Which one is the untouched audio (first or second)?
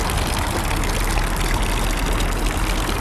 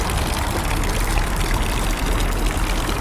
first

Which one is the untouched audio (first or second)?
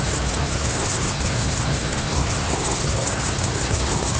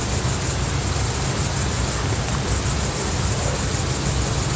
second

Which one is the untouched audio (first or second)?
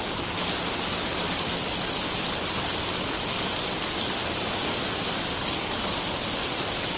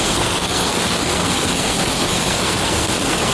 first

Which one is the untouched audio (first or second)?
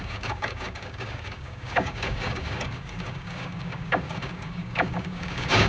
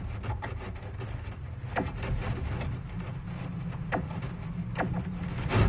second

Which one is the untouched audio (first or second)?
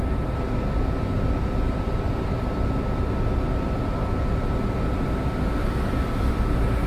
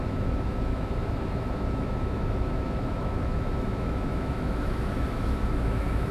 first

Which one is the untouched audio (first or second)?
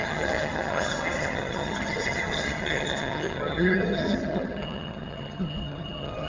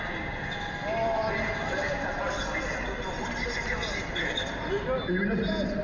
second